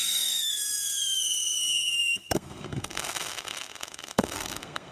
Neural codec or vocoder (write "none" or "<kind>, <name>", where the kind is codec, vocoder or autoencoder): codec, SNAC